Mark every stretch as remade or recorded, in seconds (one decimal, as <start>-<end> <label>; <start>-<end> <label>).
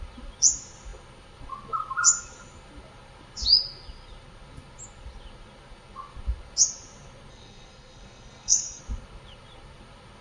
0.0-7.3 recorded; 7.3-8.8 remade; 8.8-10.2 recorded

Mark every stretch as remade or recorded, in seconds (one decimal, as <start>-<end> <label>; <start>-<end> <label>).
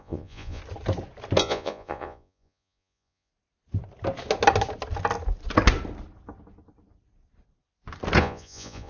0.0-0.6 remade; 0.6-1.4 recorded; 1.4-3.3 remade; 3.3-8.2 recorded; 8.2-8.9 remade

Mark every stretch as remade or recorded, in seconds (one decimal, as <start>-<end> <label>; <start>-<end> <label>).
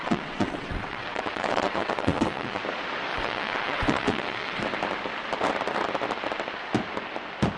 0.0-2.6 remade; 2.6-3.1 recorded; 3.1-4.6 remade; 4.6-7.6 recorded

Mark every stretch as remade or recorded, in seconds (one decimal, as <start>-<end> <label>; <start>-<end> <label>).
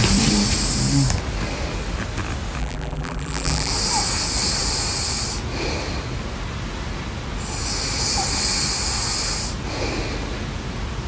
0.0-2.6 recorded; 2.6-3.7 remade; 3.7-11.1 recorded